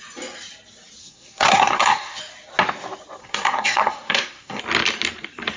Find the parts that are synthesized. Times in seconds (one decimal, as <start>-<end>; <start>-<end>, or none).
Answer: 1.0-2.2; 3.2-4.6